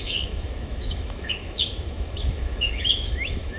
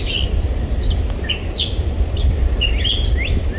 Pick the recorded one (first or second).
second